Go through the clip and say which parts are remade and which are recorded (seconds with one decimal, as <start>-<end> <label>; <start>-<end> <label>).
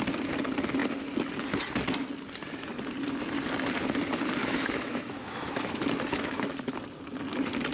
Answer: 0.0-4.4 recorded; 4.4-6.7 remade; 6.7-7.7 recorded